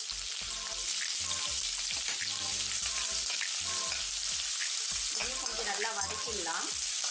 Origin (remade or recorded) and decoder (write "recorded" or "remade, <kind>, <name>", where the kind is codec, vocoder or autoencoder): recorded